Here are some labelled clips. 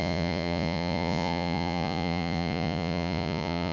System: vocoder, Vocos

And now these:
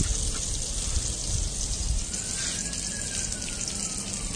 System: none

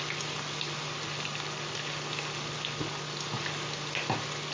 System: none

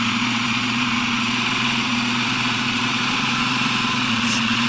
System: vocoder, Vocos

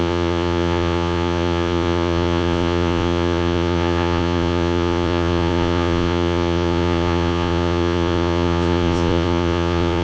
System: vocoder, Vocos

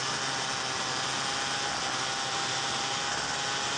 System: none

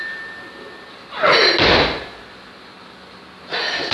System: none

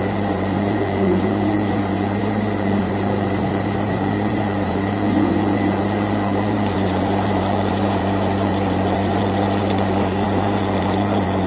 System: vocoder, Vocos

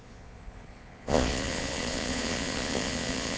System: vocoder, Vocos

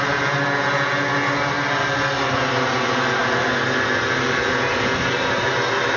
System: none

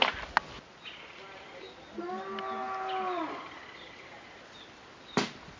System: none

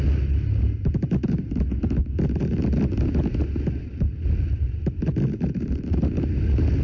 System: none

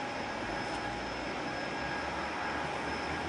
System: none